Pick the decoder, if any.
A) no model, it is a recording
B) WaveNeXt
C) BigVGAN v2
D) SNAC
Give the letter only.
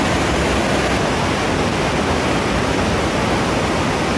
A